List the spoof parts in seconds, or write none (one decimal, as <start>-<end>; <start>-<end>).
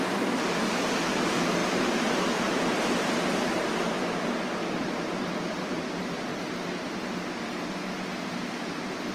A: none